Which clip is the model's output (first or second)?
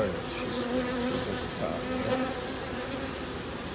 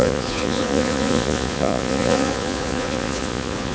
second